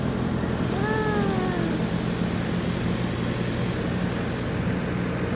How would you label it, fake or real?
real